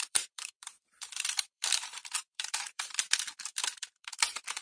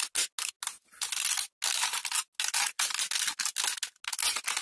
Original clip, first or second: second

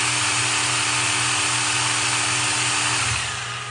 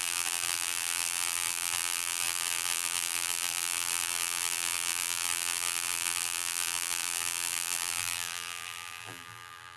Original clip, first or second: first